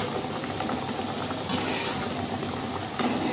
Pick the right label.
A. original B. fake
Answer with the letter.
A